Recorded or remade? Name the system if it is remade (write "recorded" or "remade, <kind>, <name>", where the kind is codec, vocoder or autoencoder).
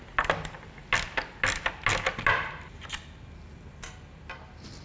recorded